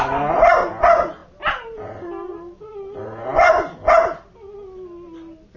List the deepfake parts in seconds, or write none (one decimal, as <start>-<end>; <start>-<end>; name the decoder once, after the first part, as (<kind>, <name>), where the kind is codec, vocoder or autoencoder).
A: none